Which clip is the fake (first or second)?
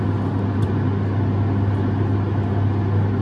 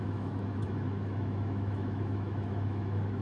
second